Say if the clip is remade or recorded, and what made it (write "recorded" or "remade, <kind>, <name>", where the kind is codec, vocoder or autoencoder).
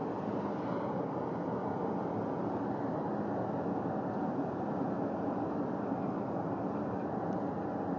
recorded